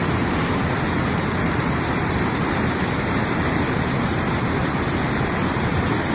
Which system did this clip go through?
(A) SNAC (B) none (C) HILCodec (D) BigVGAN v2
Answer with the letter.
D